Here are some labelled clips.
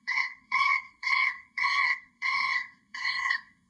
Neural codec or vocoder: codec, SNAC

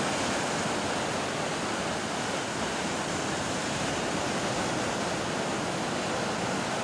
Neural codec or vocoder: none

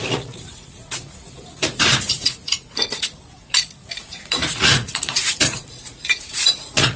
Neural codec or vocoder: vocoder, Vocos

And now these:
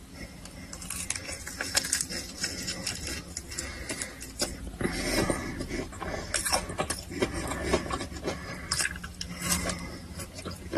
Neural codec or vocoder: none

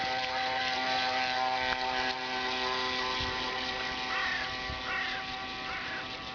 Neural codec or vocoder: none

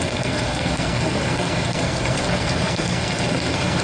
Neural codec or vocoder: codec, SNAC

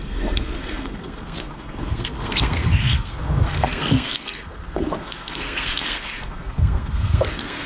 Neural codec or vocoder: codec, SNAC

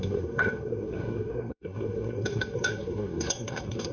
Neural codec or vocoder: codec, SNAC